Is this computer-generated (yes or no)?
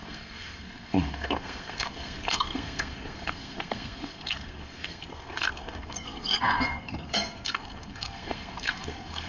yes